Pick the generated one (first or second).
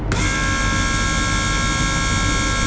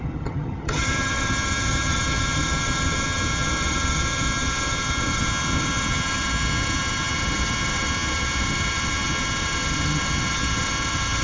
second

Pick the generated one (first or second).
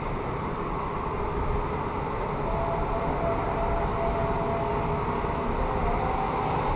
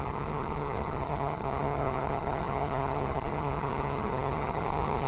second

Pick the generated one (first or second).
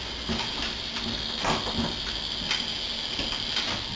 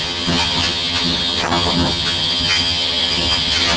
second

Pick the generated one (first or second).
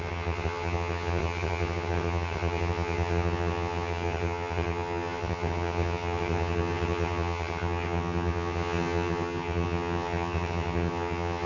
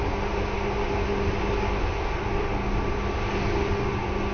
first